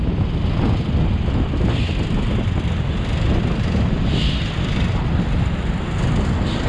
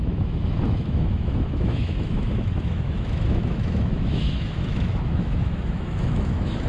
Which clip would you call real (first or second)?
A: first